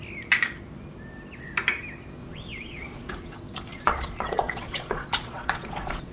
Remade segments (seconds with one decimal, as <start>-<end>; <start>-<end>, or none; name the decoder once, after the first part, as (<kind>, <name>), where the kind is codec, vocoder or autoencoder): 2.2-3.1 (vocoder, Vocos); 3.7-6.1